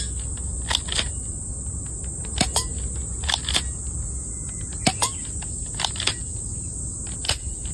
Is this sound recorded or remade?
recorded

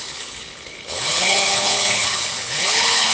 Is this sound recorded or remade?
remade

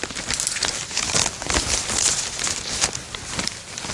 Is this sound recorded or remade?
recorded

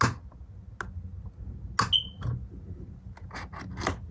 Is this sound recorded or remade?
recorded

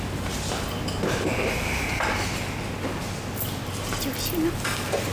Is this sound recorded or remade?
recorded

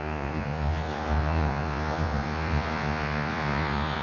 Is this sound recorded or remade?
remade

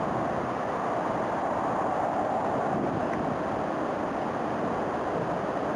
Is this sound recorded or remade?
recorded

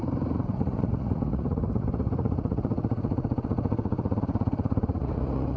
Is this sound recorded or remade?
remade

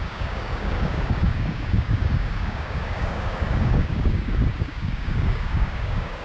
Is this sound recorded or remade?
remade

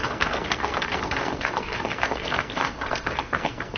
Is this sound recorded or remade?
remade